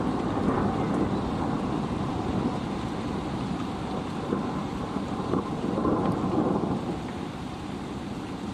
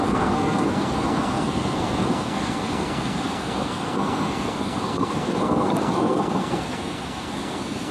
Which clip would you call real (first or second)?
first